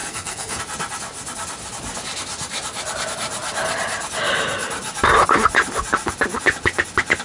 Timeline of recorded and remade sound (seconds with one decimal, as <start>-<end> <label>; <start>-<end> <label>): 0.0-0.6 remade; 0.6-7.2 recorded